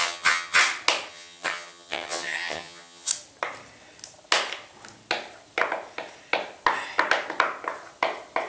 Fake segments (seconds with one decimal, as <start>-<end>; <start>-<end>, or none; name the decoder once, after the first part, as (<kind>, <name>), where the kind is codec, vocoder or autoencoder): 0.0-0.6 (vocoder, HiFi-GAN); 1.1-3.1